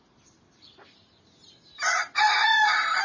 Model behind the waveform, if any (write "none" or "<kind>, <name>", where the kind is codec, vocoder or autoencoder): none